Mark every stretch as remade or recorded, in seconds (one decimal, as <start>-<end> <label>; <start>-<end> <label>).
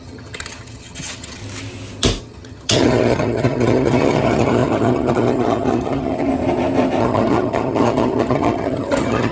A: 0.0-1.4 remade; 1.4-2.2 recorded; 2.2-6.3 remade; 6.3-7.0 recorded; 7.0-9.3 remade